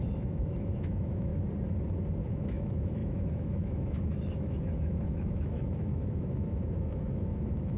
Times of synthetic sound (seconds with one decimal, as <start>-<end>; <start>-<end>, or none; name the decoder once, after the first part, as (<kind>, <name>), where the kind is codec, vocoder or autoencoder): 0.0-1.3 (autoencoder, DAC-VAE); 2.2-7.8